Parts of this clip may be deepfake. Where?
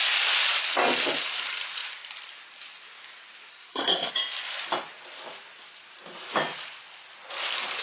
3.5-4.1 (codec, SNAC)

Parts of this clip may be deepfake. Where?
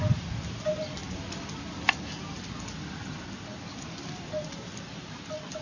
0.0-5.6 (vocoder, BigVGAN v2)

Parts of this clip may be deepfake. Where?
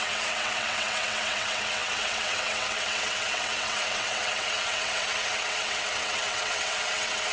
0.0-7.3 (vocoder, WaveNeXt)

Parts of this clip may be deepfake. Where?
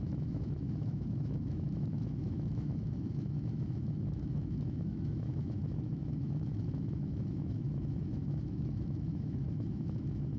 0.0-10.4 (autoencoder, DAC-VAE)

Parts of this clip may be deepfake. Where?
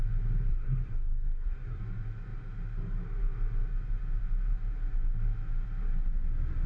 0.5-1.8 (codec, SNAC)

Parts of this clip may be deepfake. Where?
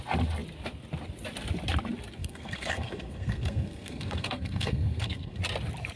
2.2-5.4 (codec, SNAC)